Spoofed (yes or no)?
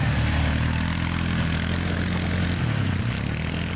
no